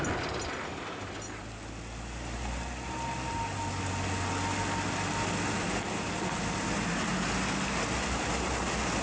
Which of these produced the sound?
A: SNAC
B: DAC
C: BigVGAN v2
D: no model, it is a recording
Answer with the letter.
D